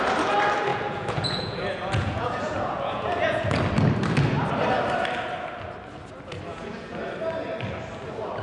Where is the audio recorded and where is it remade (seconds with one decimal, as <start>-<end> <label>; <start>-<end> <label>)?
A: 0.0-0.7 recorded; 0.7-3.5 remade; 3.5-6.5 recorded; 6.5-7.0 remade; 7.0-8.4 recorded